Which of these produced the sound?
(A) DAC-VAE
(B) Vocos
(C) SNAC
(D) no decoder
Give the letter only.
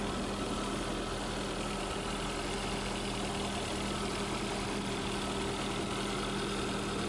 D